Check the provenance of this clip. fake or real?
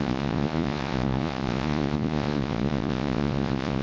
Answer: fake